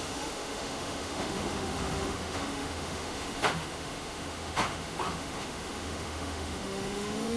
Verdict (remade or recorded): remade